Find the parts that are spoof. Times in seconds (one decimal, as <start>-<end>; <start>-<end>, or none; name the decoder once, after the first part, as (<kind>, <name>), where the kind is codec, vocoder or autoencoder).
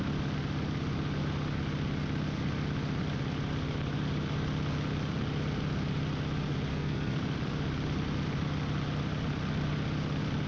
6.7-7.2 (codec, SNAC)